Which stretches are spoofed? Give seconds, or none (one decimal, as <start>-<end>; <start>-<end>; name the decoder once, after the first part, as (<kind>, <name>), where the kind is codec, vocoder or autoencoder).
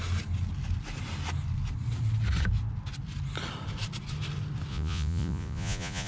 4.7-6.1 (vocoder, Vocos)